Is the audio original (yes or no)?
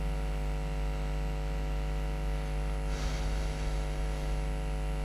yes